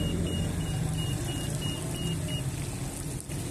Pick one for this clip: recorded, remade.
recorded